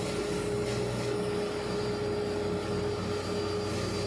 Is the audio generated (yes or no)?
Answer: no